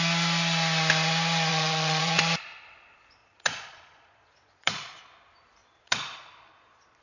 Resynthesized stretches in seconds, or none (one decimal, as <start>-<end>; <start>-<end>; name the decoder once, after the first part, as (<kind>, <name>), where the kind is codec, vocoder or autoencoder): 1.5-2.2 (vocoder, Vocos); 3.2-5.0; 5.6-7.0